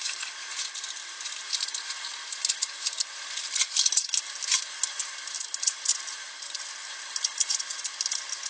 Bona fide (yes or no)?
yes